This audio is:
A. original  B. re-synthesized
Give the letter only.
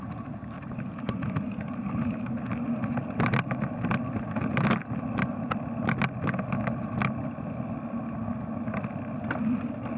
A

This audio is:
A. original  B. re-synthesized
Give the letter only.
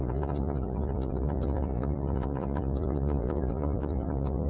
B